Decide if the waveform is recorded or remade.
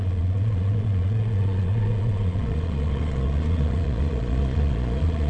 remade